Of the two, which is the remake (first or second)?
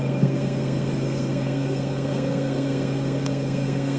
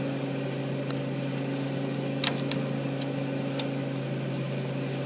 first